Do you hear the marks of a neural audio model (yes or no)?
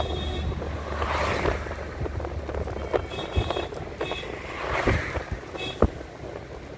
no